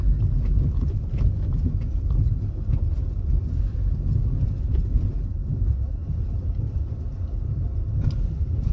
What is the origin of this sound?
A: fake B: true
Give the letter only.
B